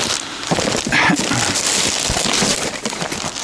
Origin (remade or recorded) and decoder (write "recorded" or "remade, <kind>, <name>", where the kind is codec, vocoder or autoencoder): recorded